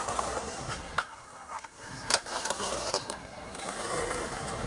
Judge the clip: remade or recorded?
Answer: remade